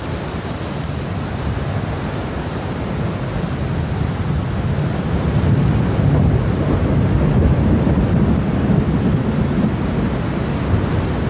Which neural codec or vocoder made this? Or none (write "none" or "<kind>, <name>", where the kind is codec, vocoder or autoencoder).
none